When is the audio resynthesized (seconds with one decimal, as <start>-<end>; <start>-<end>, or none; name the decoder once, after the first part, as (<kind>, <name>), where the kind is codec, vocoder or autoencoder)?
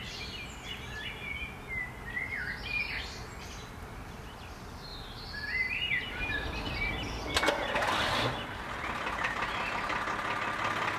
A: none